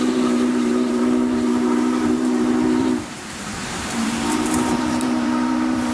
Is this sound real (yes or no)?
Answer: no